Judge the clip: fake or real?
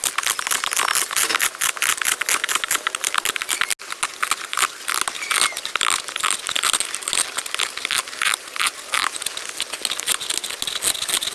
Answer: real